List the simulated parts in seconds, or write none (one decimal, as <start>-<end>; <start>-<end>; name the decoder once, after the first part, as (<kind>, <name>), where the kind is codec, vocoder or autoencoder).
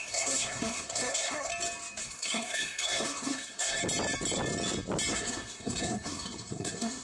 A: 0.0-1.5 (codec, SNAC); 2.0-3.8; 5.1-7.0